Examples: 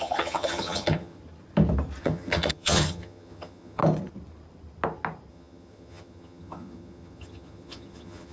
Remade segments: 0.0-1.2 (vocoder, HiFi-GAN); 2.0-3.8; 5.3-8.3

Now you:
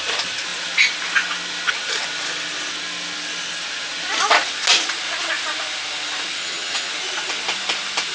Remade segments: 6.4-6.9 (vocoder, HiFi-GAN)

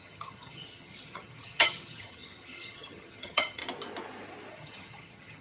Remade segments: 0.0-3.6 (vocoder, HiFi-GAN); 4.5-5.4

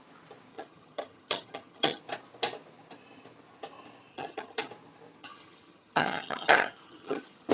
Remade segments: 0.5-2.0 (vocoder, HiFi-GAN); 4.1-4.7; 5.2-7.5

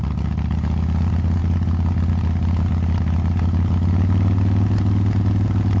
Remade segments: none

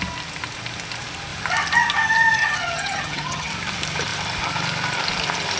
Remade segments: 2.4-3.5 (vocoder, HiFi-GAN)

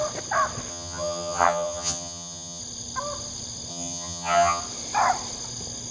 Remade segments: 0.7-2.6 (vocoder, HiFi-GAN); 3.7-4.6

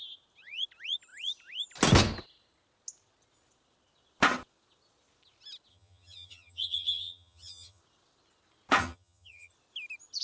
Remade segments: 5.7-7.8 (vocoder, HiFi-GAN); 8.8-9.5